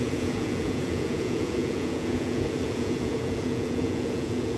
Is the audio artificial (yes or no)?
yes